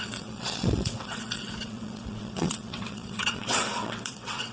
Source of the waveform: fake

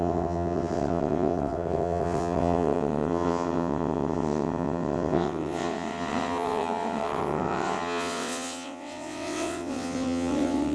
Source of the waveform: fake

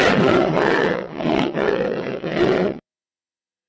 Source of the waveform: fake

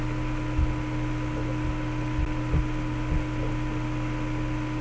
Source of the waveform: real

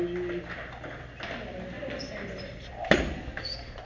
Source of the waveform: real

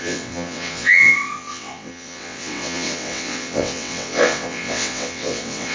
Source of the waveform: fake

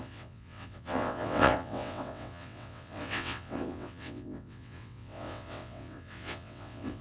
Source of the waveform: fake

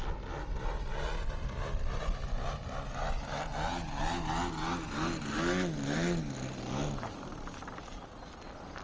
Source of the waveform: real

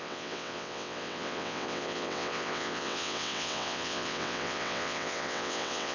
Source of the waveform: fake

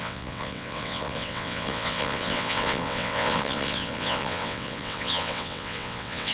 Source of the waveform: fake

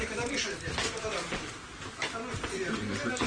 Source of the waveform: real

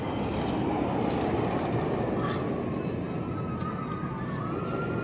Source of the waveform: real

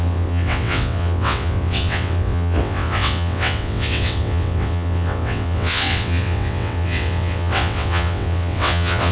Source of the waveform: fake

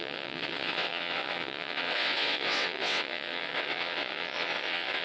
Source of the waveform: fake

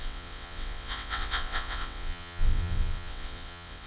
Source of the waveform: fake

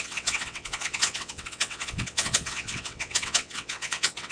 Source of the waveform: fake